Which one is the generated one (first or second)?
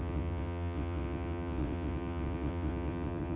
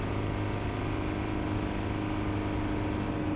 first